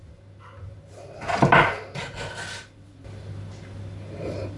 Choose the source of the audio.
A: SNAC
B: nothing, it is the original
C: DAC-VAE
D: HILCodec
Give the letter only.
B